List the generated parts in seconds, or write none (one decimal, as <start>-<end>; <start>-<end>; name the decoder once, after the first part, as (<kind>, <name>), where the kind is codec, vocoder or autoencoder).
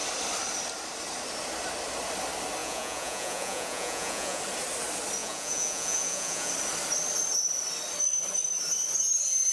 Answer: 2.6-4.4 (vocoder, Vocos); 5.2-6.5